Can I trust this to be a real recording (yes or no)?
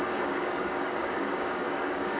no